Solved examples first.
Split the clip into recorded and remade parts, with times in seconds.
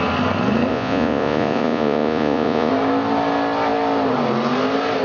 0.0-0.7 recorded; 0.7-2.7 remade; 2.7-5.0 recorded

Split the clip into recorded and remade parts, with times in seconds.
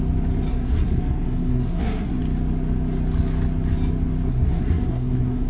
0.0-0.5 recorded; 0.5-2.2 remade; 2.2-4.3 recorded; 4.3-5.5 remade